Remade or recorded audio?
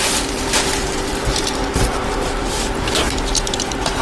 remade